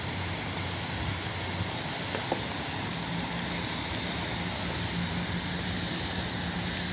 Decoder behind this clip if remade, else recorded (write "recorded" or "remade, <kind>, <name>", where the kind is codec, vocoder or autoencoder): recorded